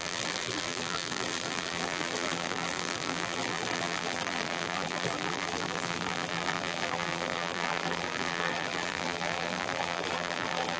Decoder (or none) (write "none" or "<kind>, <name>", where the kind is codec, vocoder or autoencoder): vocoder, BigVGAN v2